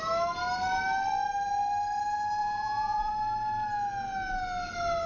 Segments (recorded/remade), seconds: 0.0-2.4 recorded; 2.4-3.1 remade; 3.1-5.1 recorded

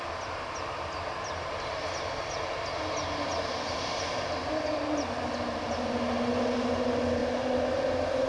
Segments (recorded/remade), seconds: 0.0-8.3 recorded

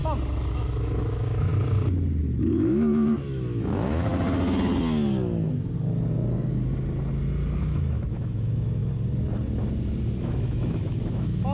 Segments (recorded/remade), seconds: 0.0-0.5 recorded; 0.5-1.5 remade; 1.5-2.2 recorded; 2.2-4.1 remade; 4.1-7.6 recorded; 7.6-8.8 remade; 8.8-10.2 recorded; 10.2-11.5 remade

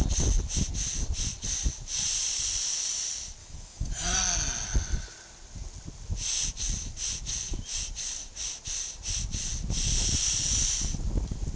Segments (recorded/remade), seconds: 0.0-3.4 recorded; 3.4-4.2 remade; 4.2-11.6 recorded

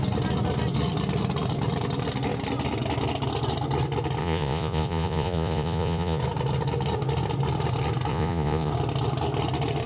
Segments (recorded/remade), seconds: 0.0-4.2 recorded; 4.2-6.2 remade; 6.2-8.1 recorded; 8.1-8.7 remade; 8.7-9.9 recorded